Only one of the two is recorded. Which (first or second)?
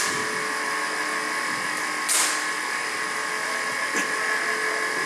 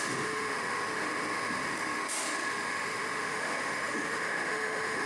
first